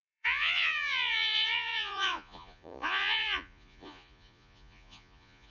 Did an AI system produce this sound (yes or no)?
yes